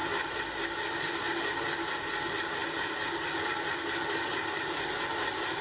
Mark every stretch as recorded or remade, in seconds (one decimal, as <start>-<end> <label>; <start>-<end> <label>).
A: 0.0-5.6 recorded